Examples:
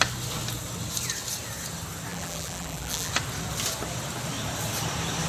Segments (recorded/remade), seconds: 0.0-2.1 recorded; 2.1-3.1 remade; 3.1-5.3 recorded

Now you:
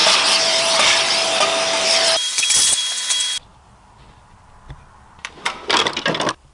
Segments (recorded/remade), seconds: 0.0-2.4 remade; 2.4-3.5 recorded; 3.5-5.9 remade; 5.9-6.5 recorded